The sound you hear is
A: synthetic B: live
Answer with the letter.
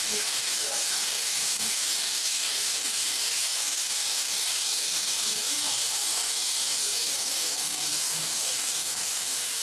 A